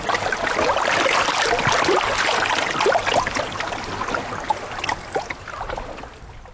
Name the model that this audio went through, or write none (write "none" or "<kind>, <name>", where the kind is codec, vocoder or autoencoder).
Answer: none